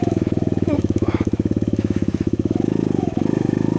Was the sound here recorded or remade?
remade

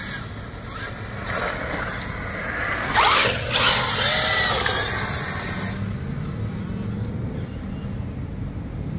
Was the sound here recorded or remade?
recorded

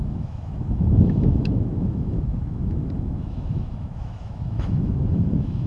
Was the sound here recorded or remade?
remade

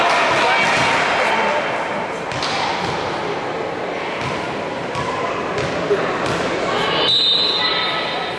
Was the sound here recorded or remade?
recorded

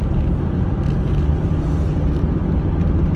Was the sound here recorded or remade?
recorded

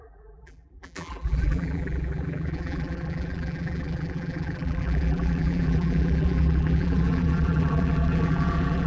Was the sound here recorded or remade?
remade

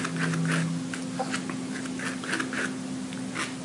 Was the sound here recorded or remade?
recorded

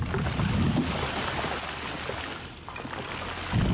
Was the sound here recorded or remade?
recorded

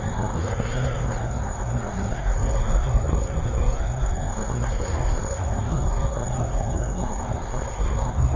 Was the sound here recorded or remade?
remade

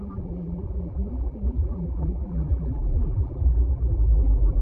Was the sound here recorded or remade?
remade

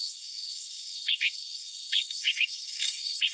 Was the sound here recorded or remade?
remade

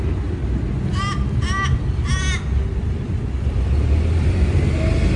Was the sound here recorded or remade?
recorded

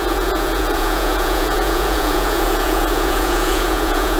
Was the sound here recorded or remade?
remade